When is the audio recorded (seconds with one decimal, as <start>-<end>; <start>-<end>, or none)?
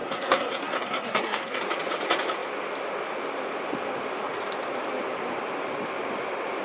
1.6-6.6